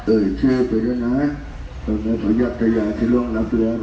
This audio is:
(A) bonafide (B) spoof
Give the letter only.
A